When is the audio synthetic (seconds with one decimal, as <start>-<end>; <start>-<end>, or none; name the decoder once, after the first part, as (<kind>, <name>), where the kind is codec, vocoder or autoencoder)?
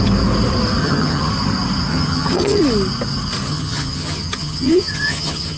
0.8-1.3 (vocoder, HiFi-GAN); 1.9-2.6; 3.5-5.6